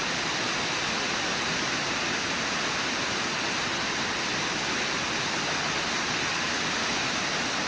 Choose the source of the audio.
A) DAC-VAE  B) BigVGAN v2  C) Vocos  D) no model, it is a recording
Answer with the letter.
D